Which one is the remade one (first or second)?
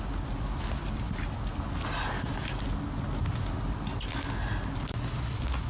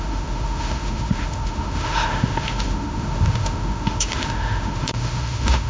second